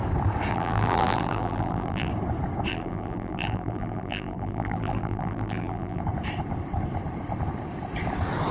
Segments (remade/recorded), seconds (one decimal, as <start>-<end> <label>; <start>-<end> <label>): 0.0-0.5 recorded; 0.5-2.1 remade; 2.1-2.7 recorded; 2.7-6.0 remade; 6.0-8.5 recorded